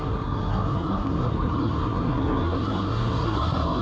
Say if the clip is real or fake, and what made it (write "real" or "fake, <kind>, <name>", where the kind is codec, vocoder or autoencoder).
fake, codec, SNAC